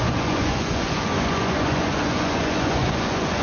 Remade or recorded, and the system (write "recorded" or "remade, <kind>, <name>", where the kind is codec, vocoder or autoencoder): remade, vocoder, Vocos